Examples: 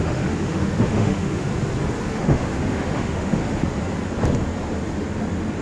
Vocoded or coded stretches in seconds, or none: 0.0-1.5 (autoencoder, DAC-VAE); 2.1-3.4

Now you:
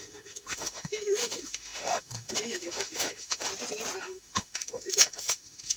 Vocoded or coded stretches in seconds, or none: 0.0-3.5 (autoencoder, DAC-VAE); 4.0-5.8